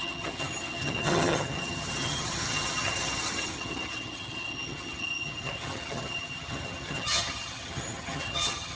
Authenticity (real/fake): fake